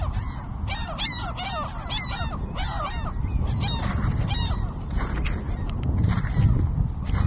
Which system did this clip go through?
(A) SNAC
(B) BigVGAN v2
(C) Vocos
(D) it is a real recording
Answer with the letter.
D